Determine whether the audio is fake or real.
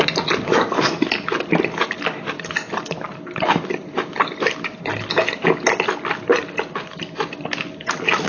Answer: real